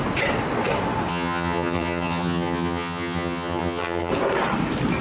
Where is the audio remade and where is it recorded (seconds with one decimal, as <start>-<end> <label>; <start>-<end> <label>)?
0.0-1.1 recorded; 1.1-4.1 remade; 4.1-5.0 recorded